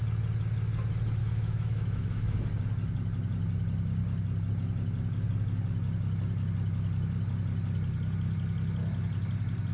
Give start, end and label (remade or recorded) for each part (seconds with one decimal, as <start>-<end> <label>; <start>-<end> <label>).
0.0-1.2 recorded; 1.2-2.5 remade; 2.5-9.7 recorded